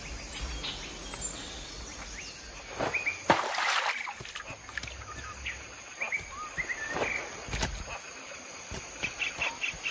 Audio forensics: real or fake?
real